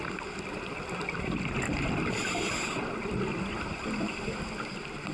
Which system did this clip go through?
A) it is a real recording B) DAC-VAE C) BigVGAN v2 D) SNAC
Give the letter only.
C